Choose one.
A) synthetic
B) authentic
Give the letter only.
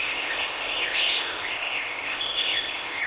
A